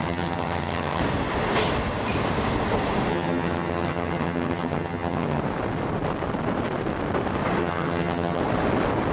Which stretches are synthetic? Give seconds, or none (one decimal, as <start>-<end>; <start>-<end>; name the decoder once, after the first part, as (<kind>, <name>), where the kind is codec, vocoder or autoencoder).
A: 0.0-1.0 (vocoder, HiFi-GAN); 3.1-5.4; 7.6-8.4